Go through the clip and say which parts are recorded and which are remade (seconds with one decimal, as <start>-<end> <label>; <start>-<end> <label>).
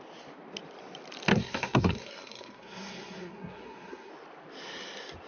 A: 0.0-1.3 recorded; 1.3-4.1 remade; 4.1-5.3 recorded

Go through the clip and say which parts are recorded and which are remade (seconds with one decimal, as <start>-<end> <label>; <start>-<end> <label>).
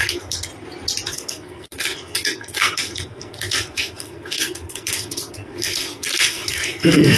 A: 0.0-0.5 remade; 0.5-1.1 recorded; 1.1-7.2 remade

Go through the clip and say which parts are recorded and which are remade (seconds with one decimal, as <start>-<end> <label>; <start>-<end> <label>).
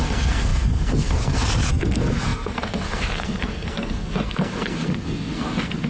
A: 0.0-5.9 remade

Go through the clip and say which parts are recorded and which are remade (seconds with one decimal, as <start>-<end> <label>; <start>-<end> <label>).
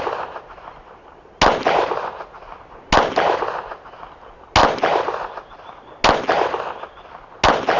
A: 0.0-7.8 recorded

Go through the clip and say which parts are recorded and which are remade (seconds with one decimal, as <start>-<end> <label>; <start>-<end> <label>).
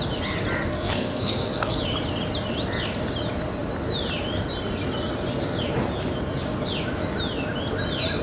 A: 0.0-0.7 recorded; 0.7-1.8 remade; 1.8-8.2 recorded